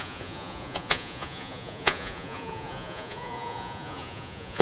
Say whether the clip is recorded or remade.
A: remade